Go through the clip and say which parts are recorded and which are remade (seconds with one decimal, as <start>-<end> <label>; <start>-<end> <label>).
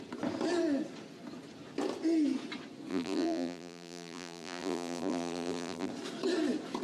0.0-2.9 recorded; 2.9-5.9 remade; 5.9-6.8 recorded